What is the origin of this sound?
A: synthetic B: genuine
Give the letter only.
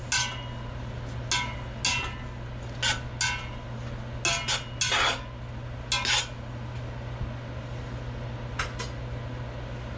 B